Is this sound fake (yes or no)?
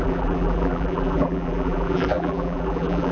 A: yes